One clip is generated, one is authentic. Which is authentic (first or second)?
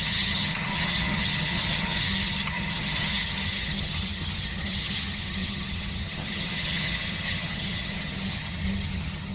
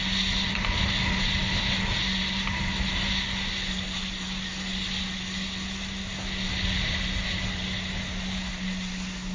second